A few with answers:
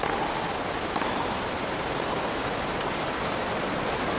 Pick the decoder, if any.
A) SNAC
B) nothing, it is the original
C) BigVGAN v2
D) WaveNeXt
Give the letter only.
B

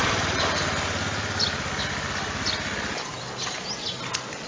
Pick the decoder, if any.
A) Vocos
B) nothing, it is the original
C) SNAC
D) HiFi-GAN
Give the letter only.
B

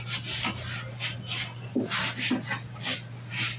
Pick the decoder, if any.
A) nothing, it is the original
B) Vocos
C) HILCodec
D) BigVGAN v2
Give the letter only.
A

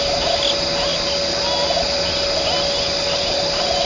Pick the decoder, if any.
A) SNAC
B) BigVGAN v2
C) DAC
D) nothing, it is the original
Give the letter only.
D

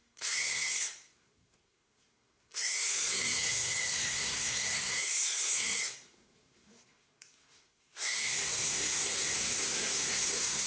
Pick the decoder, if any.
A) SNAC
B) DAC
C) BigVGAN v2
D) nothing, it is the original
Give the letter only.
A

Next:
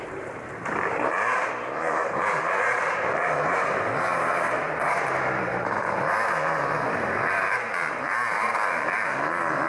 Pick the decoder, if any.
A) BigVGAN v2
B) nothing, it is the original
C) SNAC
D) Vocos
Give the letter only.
A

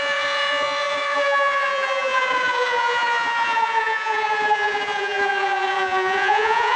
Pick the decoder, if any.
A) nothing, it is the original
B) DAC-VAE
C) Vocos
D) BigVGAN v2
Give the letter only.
C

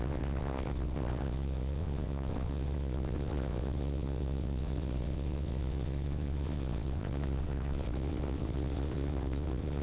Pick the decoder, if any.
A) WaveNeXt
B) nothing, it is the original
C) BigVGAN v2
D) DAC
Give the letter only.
A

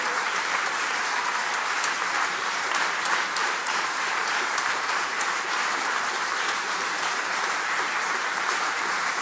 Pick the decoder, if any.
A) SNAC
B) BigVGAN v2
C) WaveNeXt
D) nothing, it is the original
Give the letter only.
B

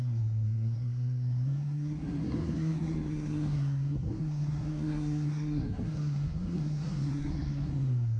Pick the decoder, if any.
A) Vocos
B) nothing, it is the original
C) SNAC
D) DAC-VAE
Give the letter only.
C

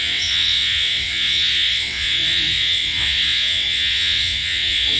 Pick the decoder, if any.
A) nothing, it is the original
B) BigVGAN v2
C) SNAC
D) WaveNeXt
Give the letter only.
D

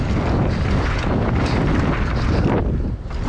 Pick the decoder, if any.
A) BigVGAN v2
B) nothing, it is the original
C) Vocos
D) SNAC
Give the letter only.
B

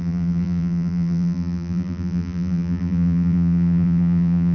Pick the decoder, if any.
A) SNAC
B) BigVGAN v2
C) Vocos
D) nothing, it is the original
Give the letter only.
B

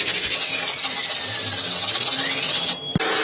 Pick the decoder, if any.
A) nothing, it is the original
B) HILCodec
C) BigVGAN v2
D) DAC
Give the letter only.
A